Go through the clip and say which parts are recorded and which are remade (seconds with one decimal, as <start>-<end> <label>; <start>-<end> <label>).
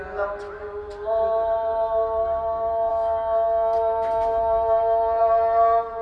0.0-6.0 recorded